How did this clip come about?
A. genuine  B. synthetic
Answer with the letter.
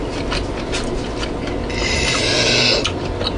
A